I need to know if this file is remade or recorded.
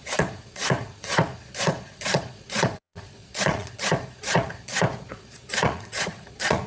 remade